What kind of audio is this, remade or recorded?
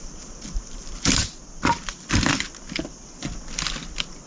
remade